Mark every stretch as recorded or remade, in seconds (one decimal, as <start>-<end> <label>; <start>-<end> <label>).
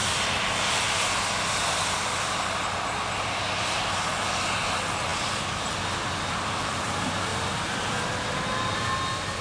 0.0-7.3 recorded; 7.3-8.1 remade; 8.1-9.4 recorded